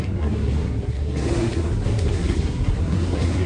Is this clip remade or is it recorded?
remade